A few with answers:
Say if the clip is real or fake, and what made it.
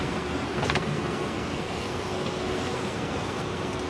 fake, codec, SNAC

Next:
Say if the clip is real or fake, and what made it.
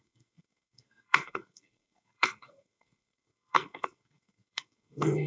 fake, codec, SNAC